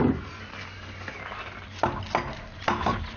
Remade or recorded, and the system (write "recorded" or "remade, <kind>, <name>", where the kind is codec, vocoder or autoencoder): recorded